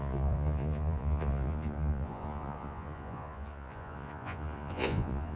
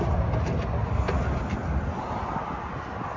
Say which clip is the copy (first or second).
first